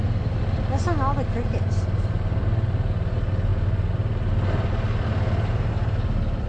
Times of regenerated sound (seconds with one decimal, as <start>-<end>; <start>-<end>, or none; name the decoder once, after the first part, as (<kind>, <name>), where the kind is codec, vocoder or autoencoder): none